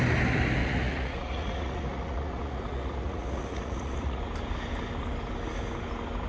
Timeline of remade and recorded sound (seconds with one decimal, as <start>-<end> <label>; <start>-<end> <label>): 0.0-0.6 recorded; 0.6-4.2 remade; 4.2-6.3 recorded